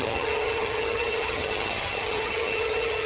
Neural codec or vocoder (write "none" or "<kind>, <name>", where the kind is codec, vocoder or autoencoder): vocoder, HiFi-GAN